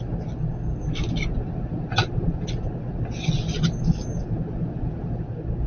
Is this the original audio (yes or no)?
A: yes